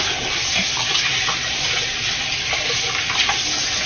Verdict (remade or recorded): recorded